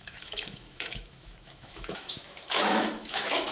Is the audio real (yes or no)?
no